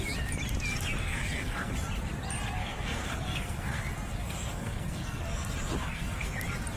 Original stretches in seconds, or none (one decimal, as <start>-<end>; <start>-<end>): 0.0-1.0; 1.7-2.6; 3.8-4.2; 5.2-5.8; 6.3-6.8

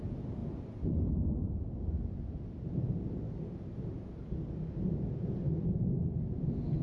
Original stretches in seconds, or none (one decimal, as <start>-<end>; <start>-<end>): 0.0-6.8